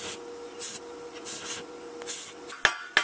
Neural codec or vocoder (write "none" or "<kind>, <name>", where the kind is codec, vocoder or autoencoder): none